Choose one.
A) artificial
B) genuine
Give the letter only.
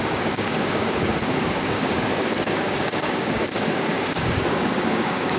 A